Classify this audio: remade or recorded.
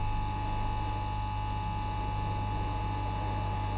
recorded